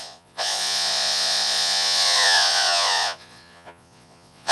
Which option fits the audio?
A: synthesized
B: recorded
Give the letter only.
A